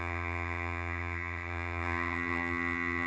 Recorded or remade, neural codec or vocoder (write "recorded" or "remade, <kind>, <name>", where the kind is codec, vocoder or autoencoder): remade, vocoder, HiFi-GAN